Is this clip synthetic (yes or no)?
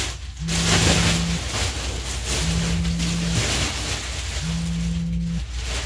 no